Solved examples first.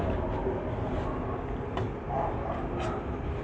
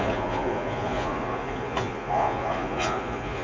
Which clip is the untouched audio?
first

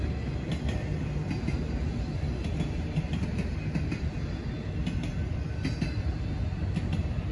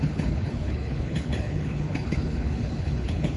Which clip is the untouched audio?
first